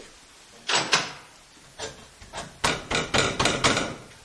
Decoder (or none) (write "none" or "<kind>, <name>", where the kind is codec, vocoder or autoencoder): none